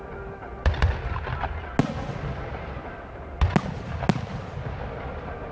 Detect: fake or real real